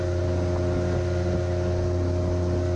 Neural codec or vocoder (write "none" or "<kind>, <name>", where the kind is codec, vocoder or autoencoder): none